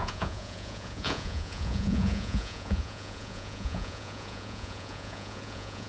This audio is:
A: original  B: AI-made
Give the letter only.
B